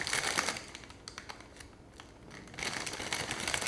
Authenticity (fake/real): real